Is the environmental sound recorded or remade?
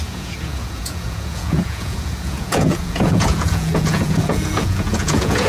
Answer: remade